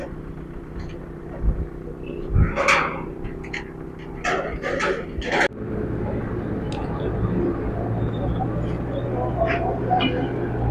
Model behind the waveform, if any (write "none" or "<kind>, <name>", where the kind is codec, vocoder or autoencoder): none